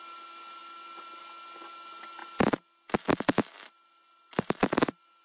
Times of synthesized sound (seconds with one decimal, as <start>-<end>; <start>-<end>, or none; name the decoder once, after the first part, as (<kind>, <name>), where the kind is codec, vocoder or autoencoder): none